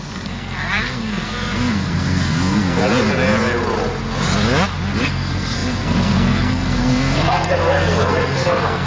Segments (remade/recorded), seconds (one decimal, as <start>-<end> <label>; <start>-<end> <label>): 0.0-2.8 remade; 2.8-5.0 recorded; 5.0-8.9 remade